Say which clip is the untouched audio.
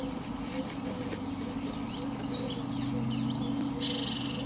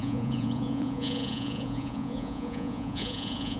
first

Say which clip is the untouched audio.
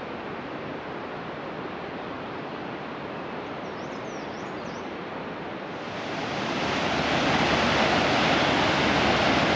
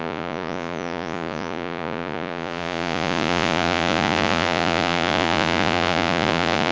first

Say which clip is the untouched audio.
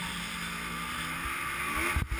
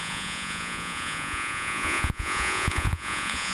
first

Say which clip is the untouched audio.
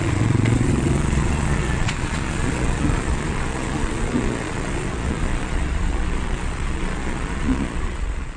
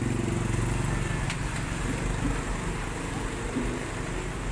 second